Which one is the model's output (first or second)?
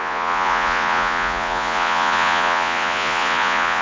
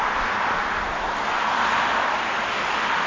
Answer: first